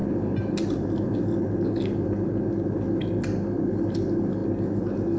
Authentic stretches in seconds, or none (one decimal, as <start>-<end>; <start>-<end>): 0.0-5.2

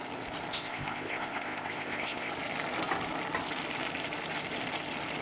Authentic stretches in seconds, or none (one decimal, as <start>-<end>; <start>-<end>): 0.0-0.5; 2.3-5.2

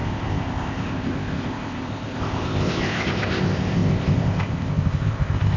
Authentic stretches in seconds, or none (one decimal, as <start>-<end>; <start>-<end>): none